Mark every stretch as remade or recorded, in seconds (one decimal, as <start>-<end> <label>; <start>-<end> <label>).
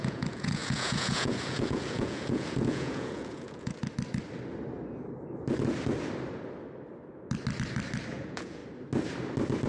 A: 0.0-3.8 remade; 3.8-8.1 recorded; 8.1-8.6 remade; 8.6-9.7 recorded